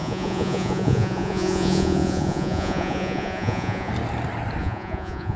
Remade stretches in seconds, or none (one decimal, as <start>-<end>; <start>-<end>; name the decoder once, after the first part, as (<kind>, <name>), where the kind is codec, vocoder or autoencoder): 0.0-3.9 (vocoder, Vocos); 4.6-5.4